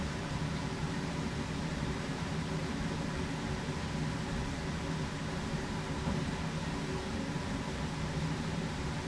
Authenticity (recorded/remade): remade